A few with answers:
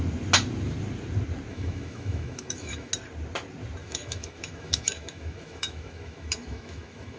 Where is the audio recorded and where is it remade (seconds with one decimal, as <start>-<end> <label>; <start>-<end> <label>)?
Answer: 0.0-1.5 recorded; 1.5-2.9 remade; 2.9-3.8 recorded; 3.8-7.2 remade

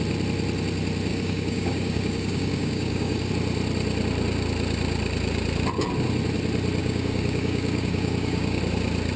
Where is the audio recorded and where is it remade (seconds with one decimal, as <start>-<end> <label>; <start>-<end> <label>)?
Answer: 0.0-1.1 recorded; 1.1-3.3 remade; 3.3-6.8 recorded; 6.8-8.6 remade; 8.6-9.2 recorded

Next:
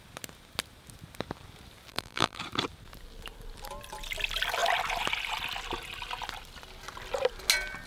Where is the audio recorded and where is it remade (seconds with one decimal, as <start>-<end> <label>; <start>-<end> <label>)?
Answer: 0.0-1.9 recorded; 1.9-2.4 remade; 2.4-7.9 recorded

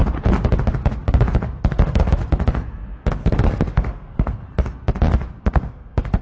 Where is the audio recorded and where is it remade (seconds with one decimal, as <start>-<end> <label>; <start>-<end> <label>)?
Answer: 0.0-1.6 recorded; 1.6-2.2 remade; 2.2-3.1 recorded; 3.1-4.4 remade; 4.4-5.4 recorded; 5.4-6.2 remade

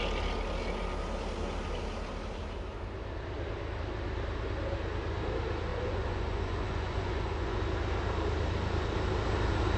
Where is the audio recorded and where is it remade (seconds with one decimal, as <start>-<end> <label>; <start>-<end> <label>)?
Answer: 0.0-5.7 recorded; 5.7-7.6 remade; 7.6-9.8 recorded

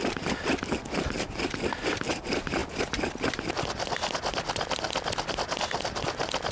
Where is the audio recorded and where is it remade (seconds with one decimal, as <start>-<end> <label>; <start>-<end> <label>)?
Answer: 0.0-6.5 recorded

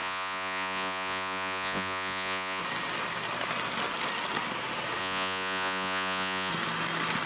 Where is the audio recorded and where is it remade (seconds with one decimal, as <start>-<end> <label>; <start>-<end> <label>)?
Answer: 0.0-2.6 remade; 2.6-5.0 recorded; 5.0-6.5 remade; 6.5-7.3 recorded

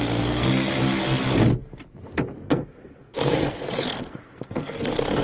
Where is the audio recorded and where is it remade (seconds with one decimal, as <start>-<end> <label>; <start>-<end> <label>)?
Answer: 0.0-0.8 remade; 0.8-2.5 recorded; 2.5-5.2 remade